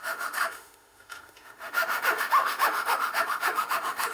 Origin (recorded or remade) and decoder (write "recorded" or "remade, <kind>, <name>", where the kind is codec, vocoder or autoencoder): remade, autoencoder, DAC-VAE